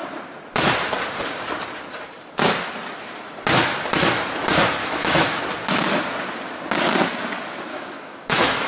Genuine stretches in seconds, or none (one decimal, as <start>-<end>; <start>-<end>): 0.0-4.8; 5.4-7.7